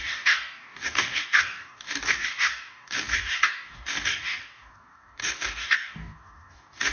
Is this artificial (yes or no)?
yes